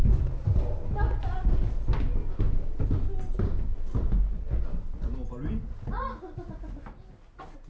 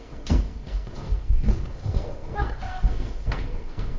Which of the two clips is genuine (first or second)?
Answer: first